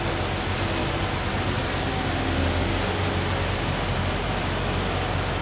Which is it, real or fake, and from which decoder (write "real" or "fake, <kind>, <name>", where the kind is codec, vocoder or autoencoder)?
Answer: real